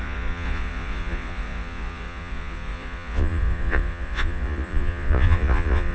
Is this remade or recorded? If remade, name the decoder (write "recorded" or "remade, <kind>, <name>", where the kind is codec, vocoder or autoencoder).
remade, vocoder, Vocos